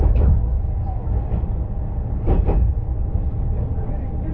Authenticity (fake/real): real